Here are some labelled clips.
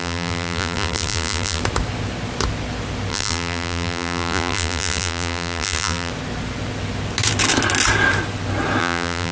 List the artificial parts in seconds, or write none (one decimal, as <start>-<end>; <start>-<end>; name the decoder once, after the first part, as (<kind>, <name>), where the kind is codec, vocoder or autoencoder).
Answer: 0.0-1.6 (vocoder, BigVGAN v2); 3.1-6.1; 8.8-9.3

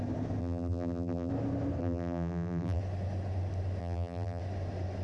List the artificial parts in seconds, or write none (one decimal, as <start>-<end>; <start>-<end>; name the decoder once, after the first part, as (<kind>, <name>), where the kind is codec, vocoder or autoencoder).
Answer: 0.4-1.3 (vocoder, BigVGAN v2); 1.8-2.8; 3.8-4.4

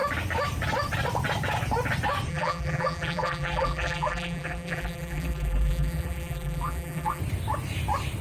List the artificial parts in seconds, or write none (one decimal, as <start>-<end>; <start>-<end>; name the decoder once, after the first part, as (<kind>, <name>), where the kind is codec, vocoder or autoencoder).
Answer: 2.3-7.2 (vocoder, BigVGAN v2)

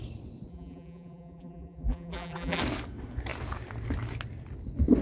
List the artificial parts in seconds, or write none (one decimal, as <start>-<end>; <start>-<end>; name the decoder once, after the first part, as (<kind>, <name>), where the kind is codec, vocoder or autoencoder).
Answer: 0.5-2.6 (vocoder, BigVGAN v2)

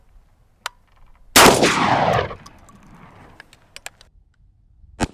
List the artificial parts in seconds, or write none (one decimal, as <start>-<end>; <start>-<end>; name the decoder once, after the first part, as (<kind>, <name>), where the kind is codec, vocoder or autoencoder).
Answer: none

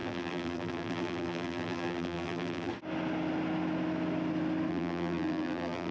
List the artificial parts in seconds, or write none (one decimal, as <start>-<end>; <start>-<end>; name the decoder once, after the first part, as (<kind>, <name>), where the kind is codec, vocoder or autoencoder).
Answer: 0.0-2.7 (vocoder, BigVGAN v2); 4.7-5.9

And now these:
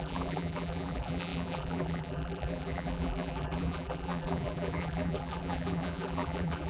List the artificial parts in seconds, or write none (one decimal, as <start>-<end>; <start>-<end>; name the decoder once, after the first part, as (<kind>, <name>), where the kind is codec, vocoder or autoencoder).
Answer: 0.0-6.7 (vocoder, BigVGAN v2)